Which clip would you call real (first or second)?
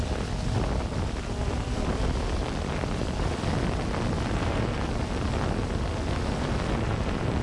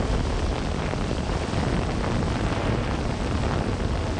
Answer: first